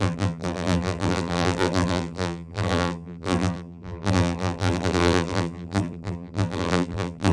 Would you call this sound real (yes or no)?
no